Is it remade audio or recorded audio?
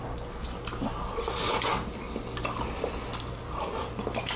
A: recorded